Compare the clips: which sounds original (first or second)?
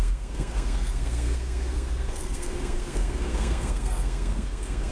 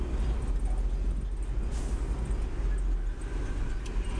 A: second